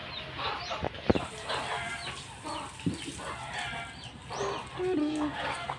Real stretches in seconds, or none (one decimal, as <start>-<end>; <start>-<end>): 0.0-5.0